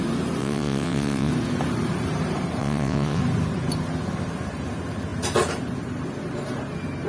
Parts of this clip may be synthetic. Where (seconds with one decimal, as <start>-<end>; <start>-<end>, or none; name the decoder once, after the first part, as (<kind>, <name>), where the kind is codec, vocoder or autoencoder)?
0.4-1.3 (vocoder, WaveNeXt); 2.6-3.2